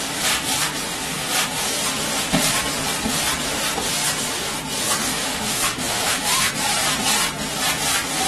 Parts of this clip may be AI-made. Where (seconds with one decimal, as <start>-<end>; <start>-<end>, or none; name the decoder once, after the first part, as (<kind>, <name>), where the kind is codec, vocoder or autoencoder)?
5.0-6.5 (autoencoder, DAC-VAE)